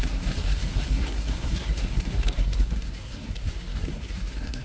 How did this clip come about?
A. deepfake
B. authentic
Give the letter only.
A